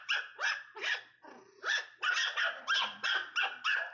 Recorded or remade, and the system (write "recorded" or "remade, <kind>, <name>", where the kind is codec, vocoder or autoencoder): recorded